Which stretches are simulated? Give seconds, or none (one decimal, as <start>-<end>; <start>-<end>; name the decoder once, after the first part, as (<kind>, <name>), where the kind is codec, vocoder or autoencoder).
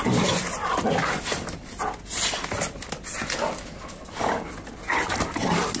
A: none